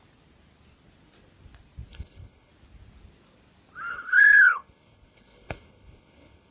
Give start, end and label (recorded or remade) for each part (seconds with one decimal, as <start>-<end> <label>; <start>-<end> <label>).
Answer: 0.0-1.9 recorded; 1.9-2.5 remade; 2.5-3.9 recorded; 3.9-6.5 remade